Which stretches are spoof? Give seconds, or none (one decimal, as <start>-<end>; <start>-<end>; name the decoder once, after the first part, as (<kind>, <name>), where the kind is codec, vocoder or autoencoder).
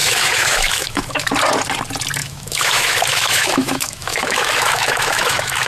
0.0-1.3 (autoencoder, DAC-VAE); 2.2-5.7